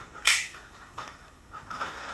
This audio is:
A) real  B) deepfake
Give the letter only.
B